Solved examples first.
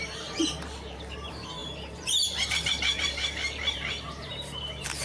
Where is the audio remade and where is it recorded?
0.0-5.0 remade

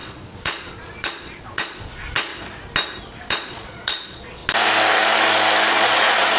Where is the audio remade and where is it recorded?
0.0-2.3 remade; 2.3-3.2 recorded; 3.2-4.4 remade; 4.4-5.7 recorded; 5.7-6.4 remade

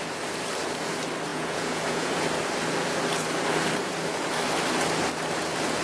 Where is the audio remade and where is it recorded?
0.0-1.3 recorded; 1.3-2.1 remade; 2.1-5.8 recorded